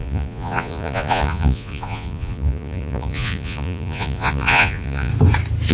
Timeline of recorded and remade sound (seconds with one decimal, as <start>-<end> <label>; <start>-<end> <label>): 0.0-5.1 remade; 5.1-5.7 recorded